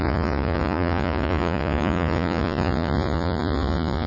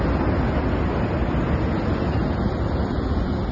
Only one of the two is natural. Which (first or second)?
second